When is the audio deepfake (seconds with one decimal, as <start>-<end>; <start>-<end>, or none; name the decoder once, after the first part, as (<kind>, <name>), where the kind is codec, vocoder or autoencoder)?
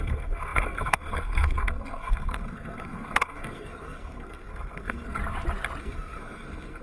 0.0-5.2 (codec, SNAC); 5.8-6.8